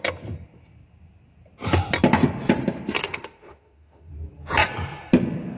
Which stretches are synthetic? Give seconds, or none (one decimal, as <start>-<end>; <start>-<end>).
3.0-4.1

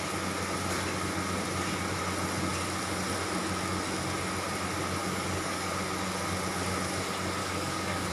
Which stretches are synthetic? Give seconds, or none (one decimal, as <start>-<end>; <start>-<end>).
5.0-5.7; 7.4-8.1

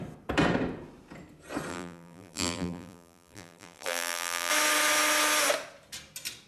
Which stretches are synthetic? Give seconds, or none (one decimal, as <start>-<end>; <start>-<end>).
1.7-4.5

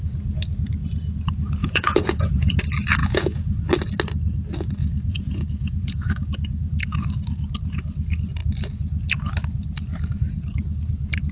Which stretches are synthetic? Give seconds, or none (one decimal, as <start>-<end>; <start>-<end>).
1.6-2.6; 3.0-3.6; 4.8-6.3

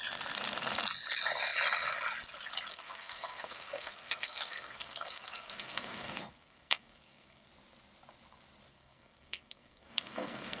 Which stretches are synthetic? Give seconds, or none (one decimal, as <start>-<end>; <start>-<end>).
2.7-7.5; 8.7-10.6